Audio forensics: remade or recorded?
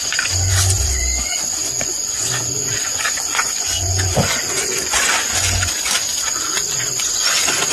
remade